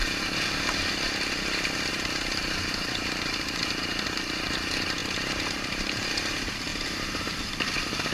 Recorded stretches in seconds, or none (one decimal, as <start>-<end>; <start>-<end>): 0.0-1.9